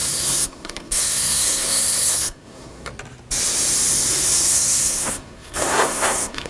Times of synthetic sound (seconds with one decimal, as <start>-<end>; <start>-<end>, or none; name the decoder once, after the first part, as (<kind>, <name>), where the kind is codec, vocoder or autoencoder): 0.0-2.9 (codec, SNAC); 4.1-6.5